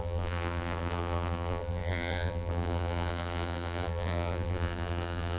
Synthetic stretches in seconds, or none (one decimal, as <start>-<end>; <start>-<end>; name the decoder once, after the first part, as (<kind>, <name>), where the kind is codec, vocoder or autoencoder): 0.0-5.4 (vocoder, BigVGAN v2)

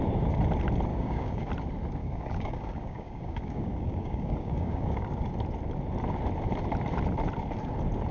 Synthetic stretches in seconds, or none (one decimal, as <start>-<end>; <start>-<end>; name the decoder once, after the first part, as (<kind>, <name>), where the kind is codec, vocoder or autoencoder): 0.9-1.5 (codec, DAC); 2.0-5.3

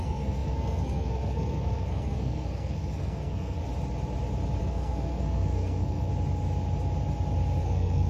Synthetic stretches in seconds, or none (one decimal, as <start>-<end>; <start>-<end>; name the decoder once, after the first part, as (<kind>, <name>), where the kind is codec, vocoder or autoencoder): 0.0-3.6 (codec, SNAC); 4.6-6.1; 7.6-8.1

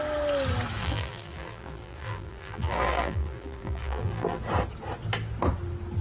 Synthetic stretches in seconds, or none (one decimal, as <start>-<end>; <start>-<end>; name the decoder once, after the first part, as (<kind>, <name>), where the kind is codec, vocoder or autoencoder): 0.8-4.4 (vocoder, BigVGAN v2)

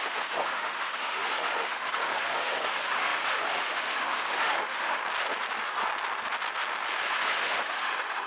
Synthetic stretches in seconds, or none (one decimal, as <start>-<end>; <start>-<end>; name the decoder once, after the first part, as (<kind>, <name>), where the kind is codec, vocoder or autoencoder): 0.0-5.0 (autoencoder, DAC-VAE); 7.1-8.3

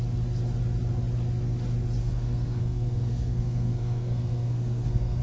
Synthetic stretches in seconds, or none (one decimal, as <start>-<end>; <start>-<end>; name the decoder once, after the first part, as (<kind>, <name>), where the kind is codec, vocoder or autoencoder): 2.0-5.2 (codec, SNAC)

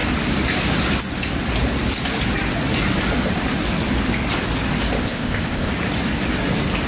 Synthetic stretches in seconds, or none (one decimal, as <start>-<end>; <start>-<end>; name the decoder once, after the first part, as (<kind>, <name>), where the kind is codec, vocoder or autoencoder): 5.0-5.7 (codec, ZipCodec)